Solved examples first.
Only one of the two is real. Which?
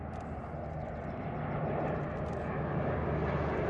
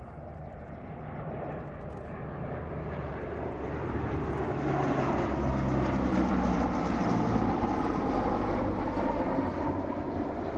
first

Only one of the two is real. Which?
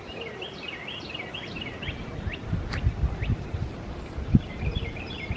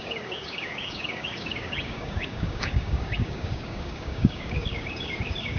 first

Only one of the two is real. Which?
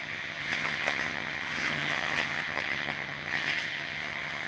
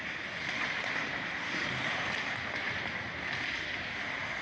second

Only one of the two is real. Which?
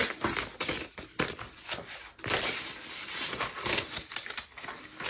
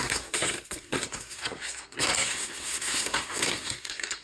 first